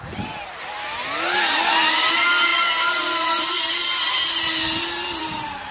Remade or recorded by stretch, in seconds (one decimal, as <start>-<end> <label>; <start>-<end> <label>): 0.0-5.7 recorded